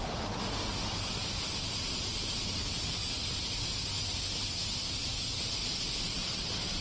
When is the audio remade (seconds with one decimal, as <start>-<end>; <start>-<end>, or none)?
1.2-2.0; 3.0-5.2